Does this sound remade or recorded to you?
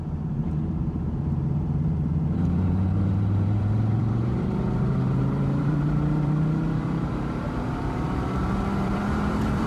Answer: remade